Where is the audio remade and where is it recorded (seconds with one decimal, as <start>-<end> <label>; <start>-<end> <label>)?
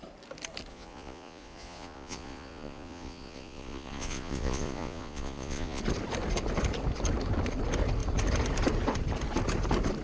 0.0-0.7 recorded; 0.7-5.8 remade; 5.8-10.0 recorded